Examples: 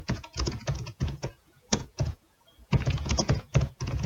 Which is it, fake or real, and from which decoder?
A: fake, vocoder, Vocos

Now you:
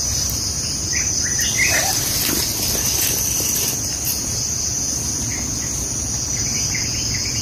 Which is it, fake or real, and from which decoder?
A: real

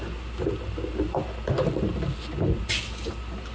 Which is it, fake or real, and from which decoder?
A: real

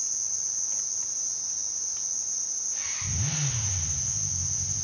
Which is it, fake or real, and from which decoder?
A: real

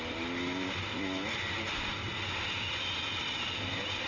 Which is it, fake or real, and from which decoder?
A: real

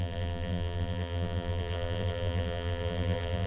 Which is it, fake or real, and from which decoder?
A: fake, vocoder, BigVGAN v2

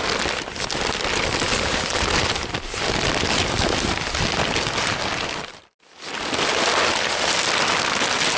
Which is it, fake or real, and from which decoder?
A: real